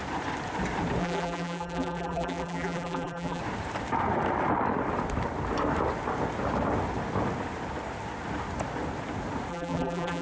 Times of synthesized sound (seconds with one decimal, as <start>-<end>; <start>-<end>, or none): 1.0-3.4; 9.5-10.2